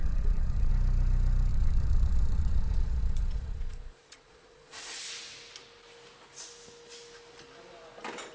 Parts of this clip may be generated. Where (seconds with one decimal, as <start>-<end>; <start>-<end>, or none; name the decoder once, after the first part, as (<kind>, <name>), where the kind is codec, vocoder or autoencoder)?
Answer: 0.0-0.7 (vocoder, Vocos); 1.5-5.0